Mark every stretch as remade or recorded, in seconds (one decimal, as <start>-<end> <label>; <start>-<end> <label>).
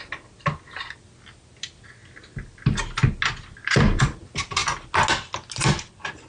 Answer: 0.0-6.3 recorded